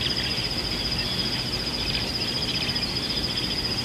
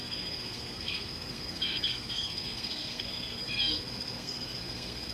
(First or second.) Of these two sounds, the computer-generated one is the second